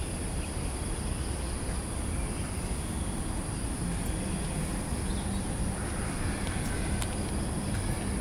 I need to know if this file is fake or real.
real